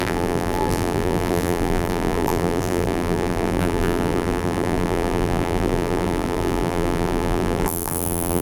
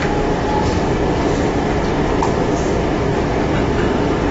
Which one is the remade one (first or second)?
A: first